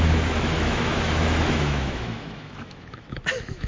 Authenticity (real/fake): fake